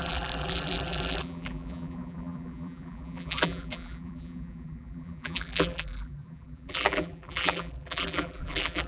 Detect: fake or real fake